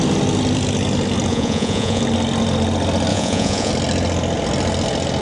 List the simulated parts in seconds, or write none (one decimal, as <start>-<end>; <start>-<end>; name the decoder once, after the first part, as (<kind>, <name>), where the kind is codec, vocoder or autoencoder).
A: 1.3-2.0 (vocoder, Vocos); 3.1-3.7